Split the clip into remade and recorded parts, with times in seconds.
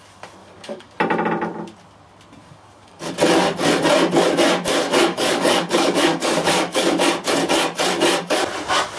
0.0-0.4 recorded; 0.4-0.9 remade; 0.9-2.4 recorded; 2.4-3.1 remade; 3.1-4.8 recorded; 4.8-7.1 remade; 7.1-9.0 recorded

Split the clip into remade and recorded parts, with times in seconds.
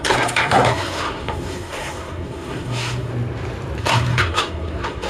0.0-3.1 remade; 3.1-3.8 recorded; 3.8-5.1 remade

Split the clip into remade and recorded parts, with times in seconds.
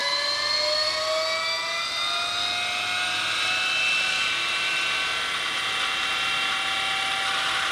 0.0-7.7 recorded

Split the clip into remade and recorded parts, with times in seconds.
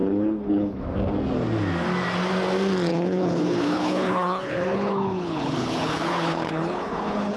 0.0-0.8 remade; 0.8-2.9 recorded; 2.9-7.4 remade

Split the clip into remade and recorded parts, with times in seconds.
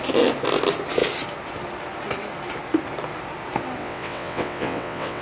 0.0-3.8 recorded; 3.8-5.2 remade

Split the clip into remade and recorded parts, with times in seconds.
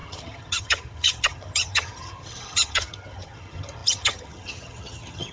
0.0-5.3 remade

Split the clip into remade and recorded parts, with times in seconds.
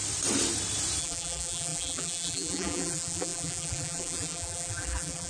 0.0-1.0 recorded; 1.0-5.3 remade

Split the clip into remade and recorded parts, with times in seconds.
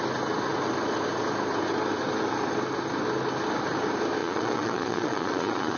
0.0-4.2 recorded; 4.2-5.8 remade